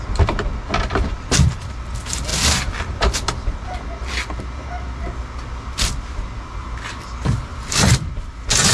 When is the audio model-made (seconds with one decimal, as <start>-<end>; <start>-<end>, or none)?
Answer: 2.3-2.8; 7.5-8.1